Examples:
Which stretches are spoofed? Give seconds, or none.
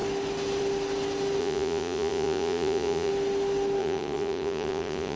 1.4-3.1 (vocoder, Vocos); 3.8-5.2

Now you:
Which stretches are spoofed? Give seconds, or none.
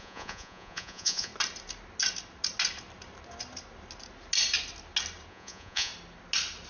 0.0-1.3 (vocoder, Vocos); 5.3-5.9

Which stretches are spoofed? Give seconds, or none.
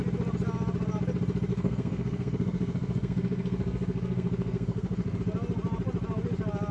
1.5-5.2 (codec, SNAC)